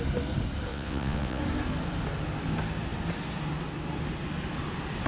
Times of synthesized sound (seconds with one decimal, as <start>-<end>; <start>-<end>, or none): 0.7-1.4